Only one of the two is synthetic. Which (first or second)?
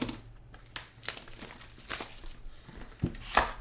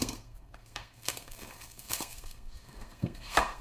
second